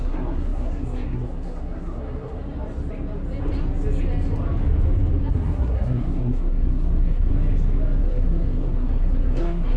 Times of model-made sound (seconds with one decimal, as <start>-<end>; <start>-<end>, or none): 0.0-2.4; 5.3-7.3; 8.0-9.8

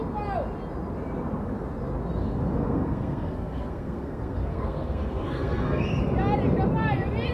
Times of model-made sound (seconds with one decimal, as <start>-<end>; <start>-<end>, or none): 2.2-6.0